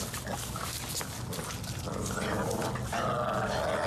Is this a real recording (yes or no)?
yes